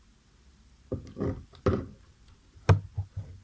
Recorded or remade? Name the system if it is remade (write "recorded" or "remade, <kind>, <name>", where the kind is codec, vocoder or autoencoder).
recorded